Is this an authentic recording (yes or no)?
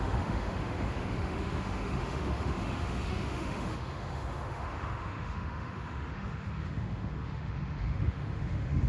no